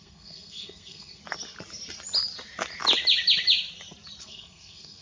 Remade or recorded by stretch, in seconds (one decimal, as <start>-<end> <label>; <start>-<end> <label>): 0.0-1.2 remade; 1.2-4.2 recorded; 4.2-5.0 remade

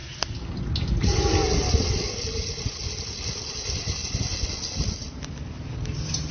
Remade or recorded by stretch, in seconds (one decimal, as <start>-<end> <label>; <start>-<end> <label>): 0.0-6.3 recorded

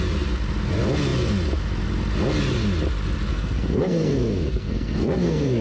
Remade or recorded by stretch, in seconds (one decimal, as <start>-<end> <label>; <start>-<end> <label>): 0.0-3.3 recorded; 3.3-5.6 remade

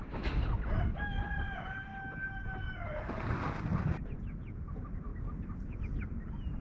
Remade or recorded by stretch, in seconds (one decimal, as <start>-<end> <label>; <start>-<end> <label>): 0.0-6.6 recorded

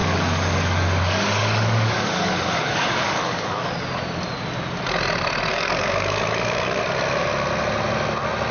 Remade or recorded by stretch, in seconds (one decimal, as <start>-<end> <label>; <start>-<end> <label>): 0.0-3.7 remade; 3.7-5.5 recorded; 5.5-6.8 remade; 6.8-8.5 recorded

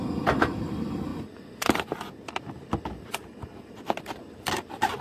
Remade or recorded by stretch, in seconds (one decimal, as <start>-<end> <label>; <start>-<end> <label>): 0.0-5.0 recorded